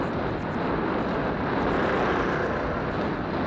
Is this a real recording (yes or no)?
yes